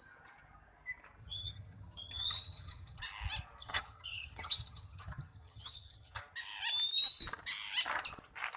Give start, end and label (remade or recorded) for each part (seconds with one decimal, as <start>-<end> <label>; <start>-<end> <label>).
0.0-1.2 recorded; 1.2-3.0 remade; 3.0-3.6 recorded; 3.6-6.2 remade; 6.2-8.6 recorded